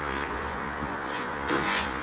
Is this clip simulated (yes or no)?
yes